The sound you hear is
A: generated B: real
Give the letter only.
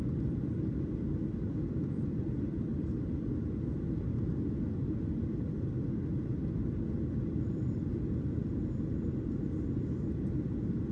B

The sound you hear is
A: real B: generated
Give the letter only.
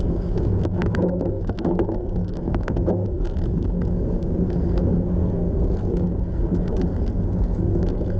B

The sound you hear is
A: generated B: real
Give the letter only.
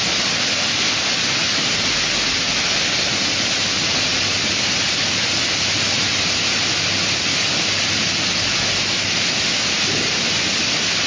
B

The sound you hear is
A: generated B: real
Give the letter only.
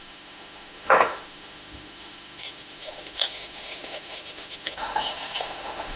A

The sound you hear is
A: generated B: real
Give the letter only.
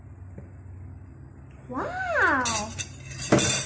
B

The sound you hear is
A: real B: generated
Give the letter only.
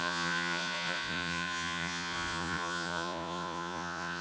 B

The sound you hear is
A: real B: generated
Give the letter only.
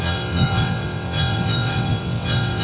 B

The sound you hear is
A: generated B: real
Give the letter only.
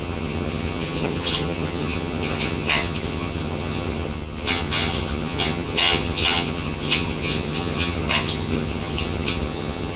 A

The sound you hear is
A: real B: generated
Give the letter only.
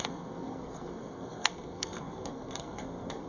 B